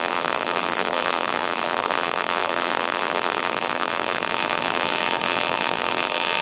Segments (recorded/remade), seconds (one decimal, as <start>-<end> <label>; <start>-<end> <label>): 0.0-6.4 remade